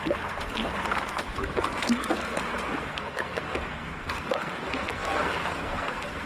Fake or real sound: fake